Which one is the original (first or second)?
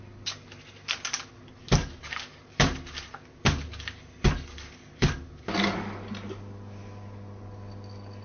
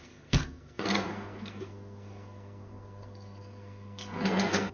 first